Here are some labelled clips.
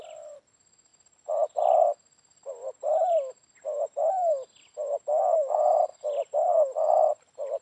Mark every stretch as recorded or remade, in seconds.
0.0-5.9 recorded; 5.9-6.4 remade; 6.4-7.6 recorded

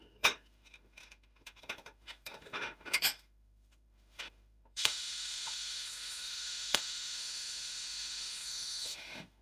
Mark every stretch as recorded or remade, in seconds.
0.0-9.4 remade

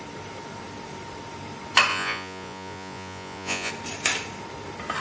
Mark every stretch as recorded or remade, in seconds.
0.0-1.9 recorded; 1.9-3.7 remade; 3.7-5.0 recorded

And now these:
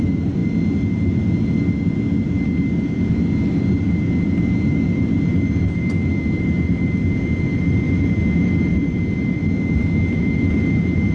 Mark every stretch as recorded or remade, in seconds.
0.0-0.4 remade; 0.4-3.8 recorded; 3.8-11.1 remade

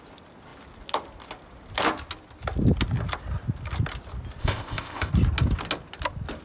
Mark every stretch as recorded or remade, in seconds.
0.0-4.4 recorded; 4.4-5.1 remade; 5.1-6.4 recorded